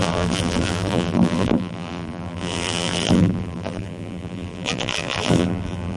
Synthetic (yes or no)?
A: yes